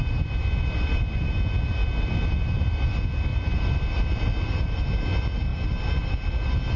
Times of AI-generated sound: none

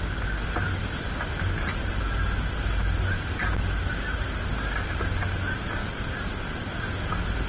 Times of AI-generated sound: none